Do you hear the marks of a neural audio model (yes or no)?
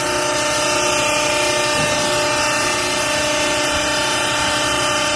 no